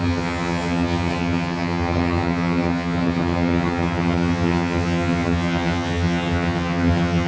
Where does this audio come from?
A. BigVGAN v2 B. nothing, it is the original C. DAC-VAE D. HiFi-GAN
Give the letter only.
D